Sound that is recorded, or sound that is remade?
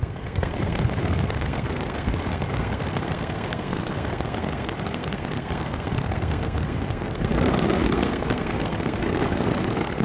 remade